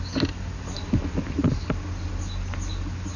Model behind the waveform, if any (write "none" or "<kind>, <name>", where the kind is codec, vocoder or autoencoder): none